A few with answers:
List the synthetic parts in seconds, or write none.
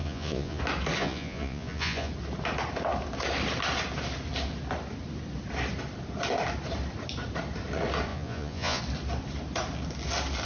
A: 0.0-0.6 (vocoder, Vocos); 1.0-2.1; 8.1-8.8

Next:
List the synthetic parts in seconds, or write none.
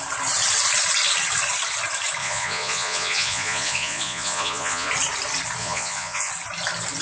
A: 2.2-4.9 (vocoder, Vocos); 5.6-6.3